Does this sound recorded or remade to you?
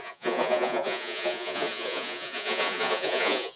remade